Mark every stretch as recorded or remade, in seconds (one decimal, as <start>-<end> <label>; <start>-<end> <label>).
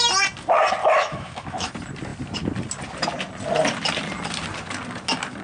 0.0-0.8 recorded; 0.8-1.7 remade; 1.7-5.4 recorded